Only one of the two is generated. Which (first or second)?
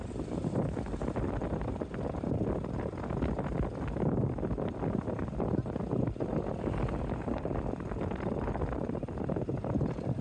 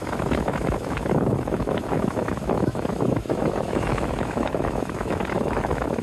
second